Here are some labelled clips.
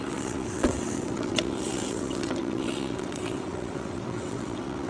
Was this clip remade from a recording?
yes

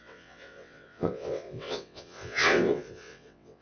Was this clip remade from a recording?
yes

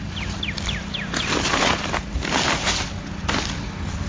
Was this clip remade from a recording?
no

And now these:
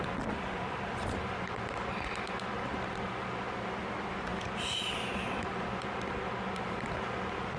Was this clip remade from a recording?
no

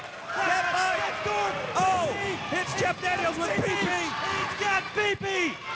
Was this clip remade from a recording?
no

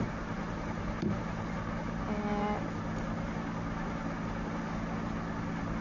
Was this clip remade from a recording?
no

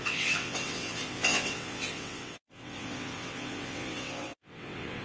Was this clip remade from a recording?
yes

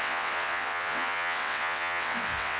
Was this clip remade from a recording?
yes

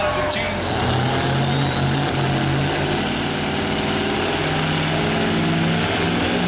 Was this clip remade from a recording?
no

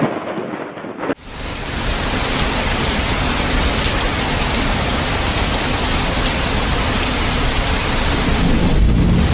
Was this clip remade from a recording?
no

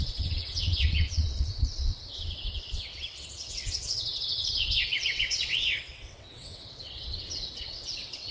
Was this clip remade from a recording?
yes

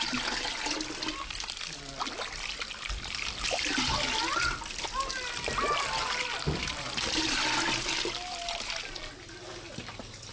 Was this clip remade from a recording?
no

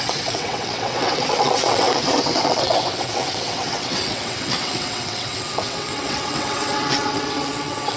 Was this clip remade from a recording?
yes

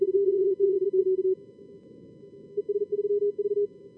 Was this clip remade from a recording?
no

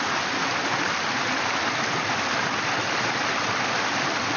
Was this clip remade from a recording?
no